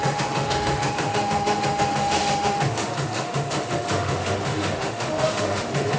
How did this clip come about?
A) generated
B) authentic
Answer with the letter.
A